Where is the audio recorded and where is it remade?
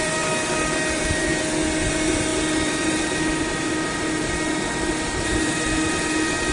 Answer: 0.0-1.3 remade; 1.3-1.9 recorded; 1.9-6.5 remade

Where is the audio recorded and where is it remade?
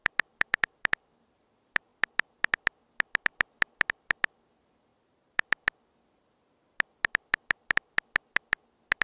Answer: 0.0-1.4 remade; 1.4-4.9 recorded; 4.9-5.5 remade; 5.5-9.0 recorded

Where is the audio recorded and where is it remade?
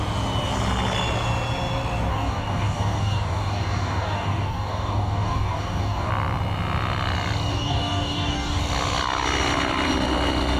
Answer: 0.0-2.1 recorded; 2.1-6.1 remade; 6.1-7.5 recorded; 7.5-8.6 remade; 8.6-10.6 recorded